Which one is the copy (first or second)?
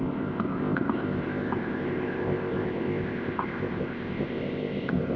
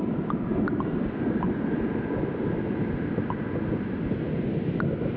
first